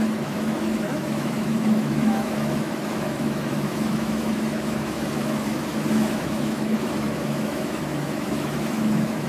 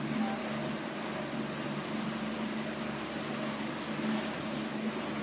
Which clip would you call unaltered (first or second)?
second